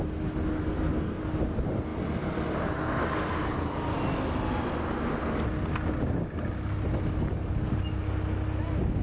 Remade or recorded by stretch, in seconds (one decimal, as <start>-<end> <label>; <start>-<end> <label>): 0.0-0.6 recorded; 0.6-1.2 remade; 1.2-9.0 recorded